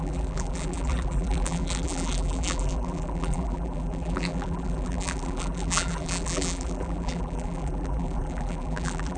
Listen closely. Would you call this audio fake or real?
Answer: fake